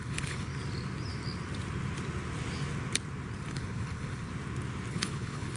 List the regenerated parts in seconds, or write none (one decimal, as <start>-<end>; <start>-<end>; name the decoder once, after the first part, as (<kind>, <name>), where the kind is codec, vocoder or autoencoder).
0.0-0.5 (codec, HILCodec); 3.5-4.3; 4.9-5.6